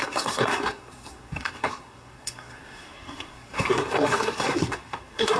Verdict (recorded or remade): remade